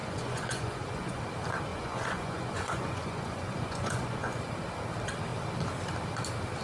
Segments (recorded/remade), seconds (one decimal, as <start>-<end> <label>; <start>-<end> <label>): 0.0-1.2 remade; 1.2-1.7 recorded; 1.7-4.4 remade; 4.4-6.6 recorded